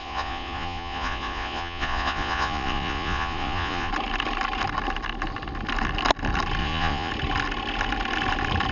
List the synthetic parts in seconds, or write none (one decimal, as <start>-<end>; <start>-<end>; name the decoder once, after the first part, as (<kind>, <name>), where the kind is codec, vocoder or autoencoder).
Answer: 0.0-3.9 (vocoder, Vocos); 6.6-7.1